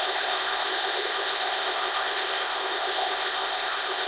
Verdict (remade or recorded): remade